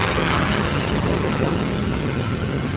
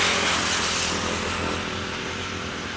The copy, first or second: first